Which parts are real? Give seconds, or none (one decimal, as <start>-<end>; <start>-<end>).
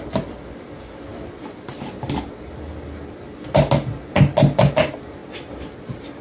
0.0-6.2